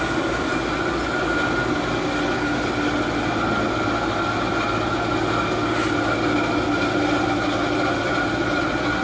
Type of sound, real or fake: real